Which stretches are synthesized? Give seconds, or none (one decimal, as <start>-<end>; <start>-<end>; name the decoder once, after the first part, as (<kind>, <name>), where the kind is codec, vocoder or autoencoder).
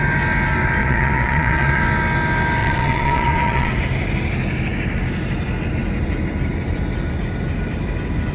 0.8-1.8 (vocoder, Vocos); 2.6-3.7